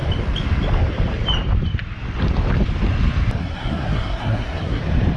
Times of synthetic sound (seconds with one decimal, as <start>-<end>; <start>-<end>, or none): 3.4-4.8